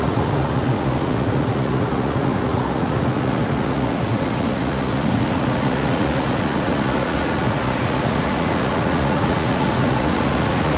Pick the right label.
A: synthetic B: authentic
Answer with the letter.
A